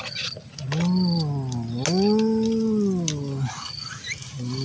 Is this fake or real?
real